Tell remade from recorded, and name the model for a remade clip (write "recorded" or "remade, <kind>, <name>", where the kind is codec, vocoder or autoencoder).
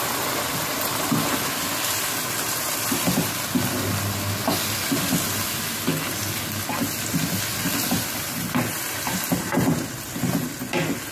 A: recorded